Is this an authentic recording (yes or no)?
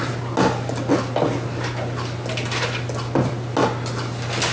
yes